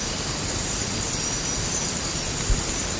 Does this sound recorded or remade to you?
recorded